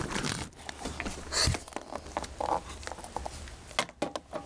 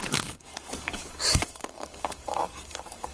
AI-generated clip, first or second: second